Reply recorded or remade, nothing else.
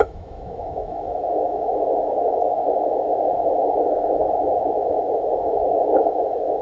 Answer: remade